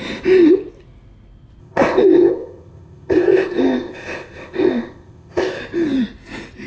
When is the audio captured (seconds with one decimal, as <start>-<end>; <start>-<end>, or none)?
0.0-1.6; 5.6-6.7